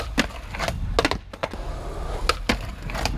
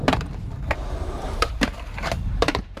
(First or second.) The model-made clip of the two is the second